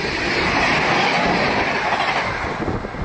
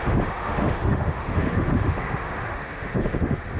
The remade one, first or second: second